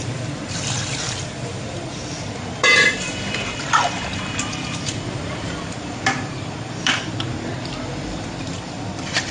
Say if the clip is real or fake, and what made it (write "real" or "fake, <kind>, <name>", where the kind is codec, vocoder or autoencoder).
fake, vocoder, BigVGAN v2